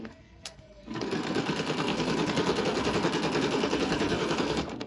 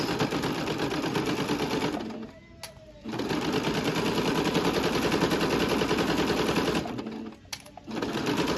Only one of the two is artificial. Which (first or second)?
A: first